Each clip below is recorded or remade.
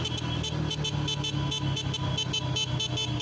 recorded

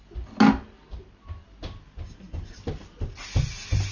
recorded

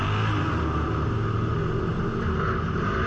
recorded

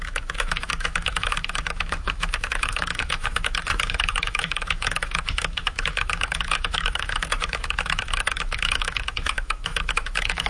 remade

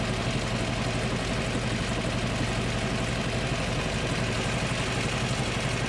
recorded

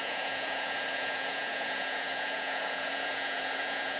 remade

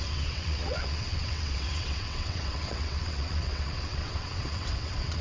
remade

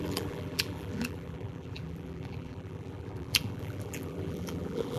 remade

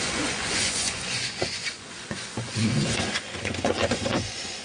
remade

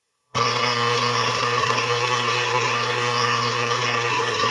remade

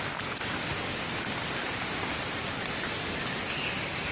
recorded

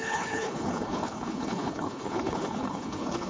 remade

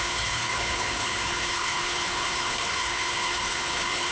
remade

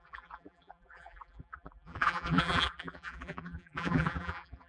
remade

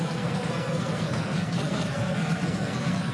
remade